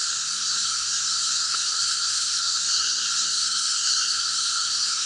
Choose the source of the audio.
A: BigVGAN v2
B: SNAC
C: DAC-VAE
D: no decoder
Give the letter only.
B